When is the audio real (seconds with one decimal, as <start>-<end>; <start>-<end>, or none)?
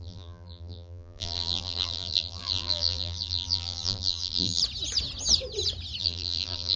4.6-6.0